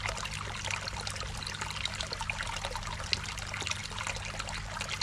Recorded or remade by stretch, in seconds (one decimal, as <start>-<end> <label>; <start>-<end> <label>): 0.0-5.0 recorded